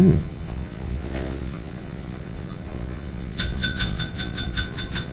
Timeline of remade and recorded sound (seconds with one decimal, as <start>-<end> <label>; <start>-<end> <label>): 0.0-5.1 remade